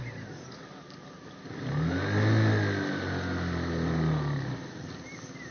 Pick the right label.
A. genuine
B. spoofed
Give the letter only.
A